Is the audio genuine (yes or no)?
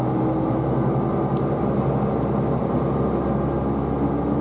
yes